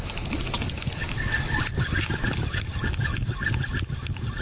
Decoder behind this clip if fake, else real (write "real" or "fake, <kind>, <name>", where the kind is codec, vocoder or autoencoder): real